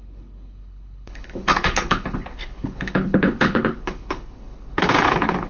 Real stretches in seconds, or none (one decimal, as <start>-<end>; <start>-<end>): none